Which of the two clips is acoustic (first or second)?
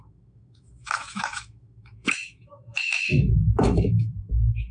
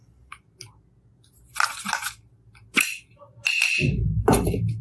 second